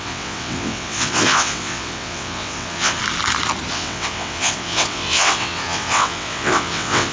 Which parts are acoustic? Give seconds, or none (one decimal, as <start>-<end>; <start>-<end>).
3.0-3.7